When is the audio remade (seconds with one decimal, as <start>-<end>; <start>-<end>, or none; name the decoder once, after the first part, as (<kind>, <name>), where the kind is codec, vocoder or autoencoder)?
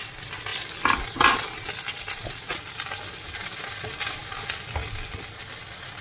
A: none